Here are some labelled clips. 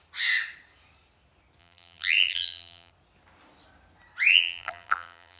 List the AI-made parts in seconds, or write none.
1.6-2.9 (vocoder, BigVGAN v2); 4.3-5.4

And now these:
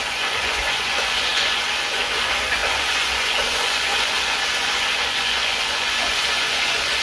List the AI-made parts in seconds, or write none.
0.0-7.0 (vocoder, Vocos)

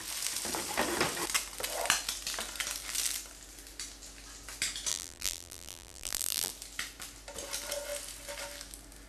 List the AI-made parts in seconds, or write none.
4.9-6.5 (vocoder, BigVGAN v2)

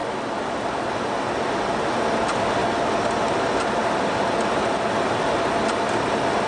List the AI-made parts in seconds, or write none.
none

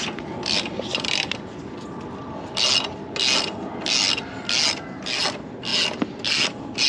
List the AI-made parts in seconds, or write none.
none

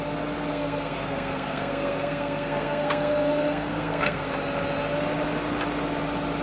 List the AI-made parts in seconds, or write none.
0.5-4.3 (codec, SNAC)

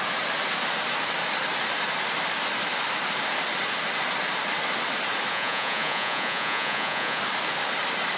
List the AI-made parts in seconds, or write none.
5.3-7.2 (vocoder, Vocos)

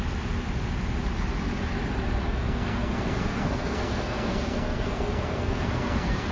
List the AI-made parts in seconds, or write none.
2.3-6.3 (codec, SNAC)